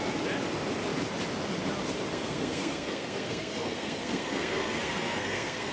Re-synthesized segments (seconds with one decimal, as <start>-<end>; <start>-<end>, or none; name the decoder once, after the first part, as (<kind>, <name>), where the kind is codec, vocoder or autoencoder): 2.1-5.7 (codec, SNAC)